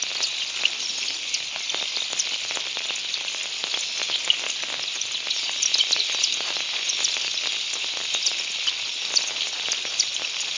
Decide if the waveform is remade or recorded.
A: recorded